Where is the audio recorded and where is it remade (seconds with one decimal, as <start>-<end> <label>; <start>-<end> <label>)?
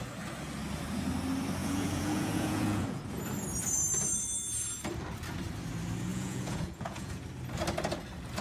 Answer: 0.0-1.6 recorded; 1.6-3.0 remade; 3.0-6.1 recorded; 6.1-7.2 remade; 7.2-8.4 recorded